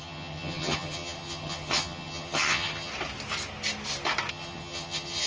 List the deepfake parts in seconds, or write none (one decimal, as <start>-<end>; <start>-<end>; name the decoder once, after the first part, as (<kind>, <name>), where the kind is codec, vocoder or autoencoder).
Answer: 0.0-2.9 (vocoder, HiFi-GAN); 4.3-5.3

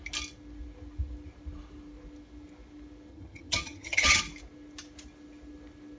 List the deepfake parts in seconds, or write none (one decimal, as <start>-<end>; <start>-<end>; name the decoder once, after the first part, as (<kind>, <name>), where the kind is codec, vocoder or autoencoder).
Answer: 3.1-4.2 (vocoder, HiFi-GAN)

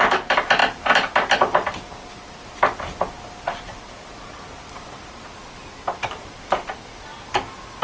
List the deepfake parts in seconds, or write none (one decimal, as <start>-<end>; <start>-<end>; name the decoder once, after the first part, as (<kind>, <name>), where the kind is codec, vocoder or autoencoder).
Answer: none